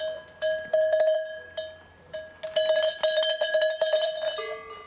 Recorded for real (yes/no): yes